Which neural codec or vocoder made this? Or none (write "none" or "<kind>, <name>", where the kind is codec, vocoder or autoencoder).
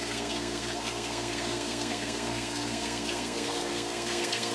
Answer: codec, SNAC